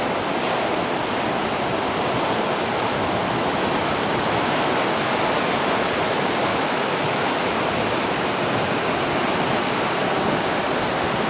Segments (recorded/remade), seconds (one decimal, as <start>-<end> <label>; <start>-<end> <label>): 0.0-6.5 recorded; 6.5-7.6 remade; 7.6-11.3 recorded